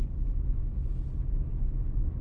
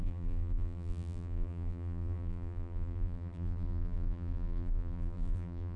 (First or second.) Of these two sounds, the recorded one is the first